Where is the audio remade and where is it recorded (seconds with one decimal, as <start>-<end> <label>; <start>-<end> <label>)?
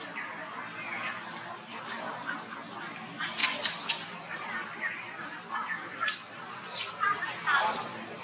0.0-8.2 recorded